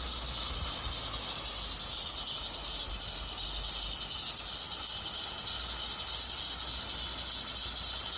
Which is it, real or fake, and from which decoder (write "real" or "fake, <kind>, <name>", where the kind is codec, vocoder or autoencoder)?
real